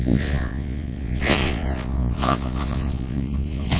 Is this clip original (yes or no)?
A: no